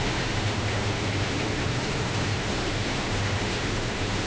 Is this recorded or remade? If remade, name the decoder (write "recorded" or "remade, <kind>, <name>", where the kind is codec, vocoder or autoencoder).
remade, autoencoder, DAC-VAE